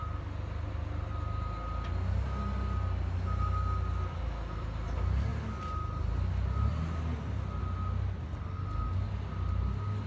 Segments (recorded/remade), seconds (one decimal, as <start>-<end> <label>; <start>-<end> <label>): 0.0-10.1 recorded

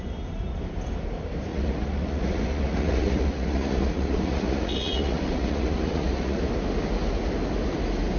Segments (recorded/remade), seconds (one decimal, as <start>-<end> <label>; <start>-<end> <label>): 0.0-1.5 recorded; 1.5-6.4 remade; 6.4-8.2 recorded

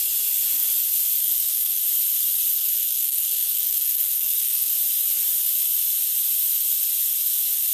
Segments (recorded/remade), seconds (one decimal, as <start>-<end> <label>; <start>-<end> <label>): 0.0-1.2 recorded; 1.2-1.8 remade; 1.8-2.5 recorded; 2.5-4.7 remade; 4.7-7.7 recorded